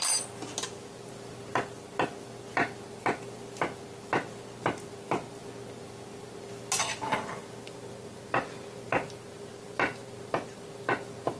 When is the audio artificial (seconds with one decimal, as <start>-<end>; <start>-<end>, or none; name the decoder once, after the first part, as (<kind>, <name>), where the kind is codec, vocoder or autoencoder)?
none